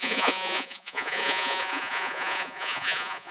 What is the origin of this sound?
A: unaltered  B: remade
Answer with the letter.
B